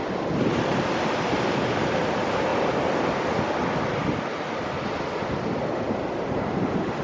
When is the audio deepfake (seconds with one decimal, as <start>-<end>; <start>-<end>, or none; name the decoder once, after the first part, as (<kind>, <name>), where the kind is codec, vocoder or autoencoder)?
0.5-2.5 (vocoder, BigVGAN v2); 6.6-7.0